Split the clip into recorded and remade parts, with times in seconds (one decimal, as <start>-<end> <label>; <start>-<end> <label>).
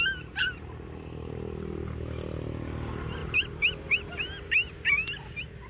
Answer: 0.0-5.7 recorded